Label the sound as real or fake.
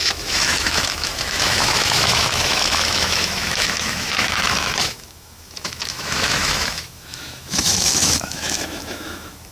fake